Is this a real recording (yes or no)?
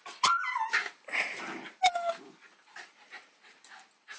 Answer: yes